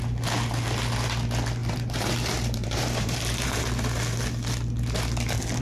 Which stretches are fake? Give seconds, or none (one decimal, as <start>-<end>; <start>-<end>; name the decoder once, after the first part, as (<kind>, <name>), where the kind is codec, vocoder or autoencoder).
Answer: 1.6-3.6 (vocoder, BigVGAN v2)